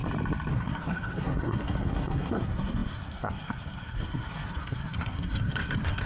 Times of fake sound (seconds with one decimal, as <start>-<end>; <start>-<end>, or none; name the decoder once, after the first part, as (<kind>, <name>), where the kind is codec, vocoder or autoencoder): 0.5-6.1 (codec, SNAC)